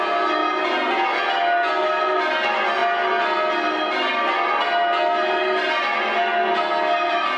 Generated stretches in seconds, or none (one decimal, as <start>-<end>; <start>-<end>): none